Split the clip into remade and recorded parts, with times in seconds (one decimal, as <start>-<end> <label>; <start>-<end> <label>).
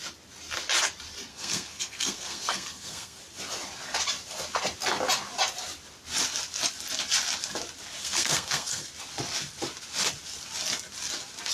0.0-1.3 recorded; 1.3-3.2 remade; 3.2-8.0 recorded; 8.0-8.9 remade; 8.9-11.5 recorded